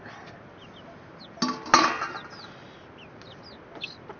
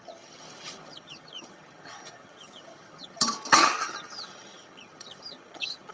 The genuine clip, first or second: first